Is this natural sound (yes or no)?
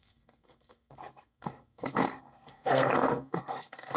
no